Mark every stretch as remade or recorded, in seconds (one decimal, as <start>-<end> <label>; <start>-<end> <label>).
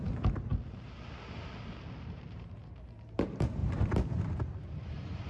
0.0-0.5 remade; 0.5-1.9 recorded; 1.9-5.3 remade